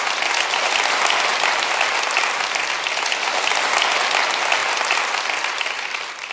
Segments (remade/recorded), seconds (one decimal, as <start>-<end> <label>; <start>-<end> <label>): 0.0-1.3 recorded; 1.3-2.7 remade; 2.7-4.6 recorded; 4.6-5.7 remade; 5.7-6.3 recorded